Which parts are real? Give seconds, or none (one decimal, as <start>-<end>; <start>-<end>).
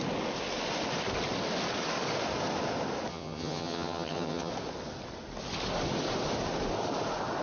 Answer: 0.0-3.1; 4.5-7.4